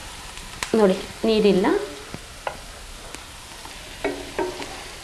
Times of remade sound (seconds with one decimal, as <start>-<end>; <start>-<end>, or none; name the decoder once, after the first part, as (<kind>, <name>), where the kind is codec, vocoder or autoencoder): none